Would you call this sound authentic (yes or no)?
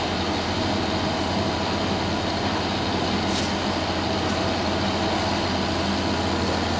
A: yes